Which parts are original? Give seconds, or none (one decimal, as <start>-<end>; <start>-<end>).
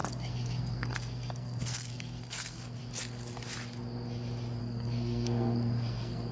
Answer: 2.8-4.6